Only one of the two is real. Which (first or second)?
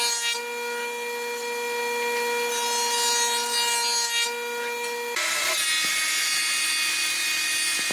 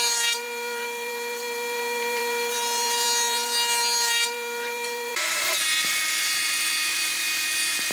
first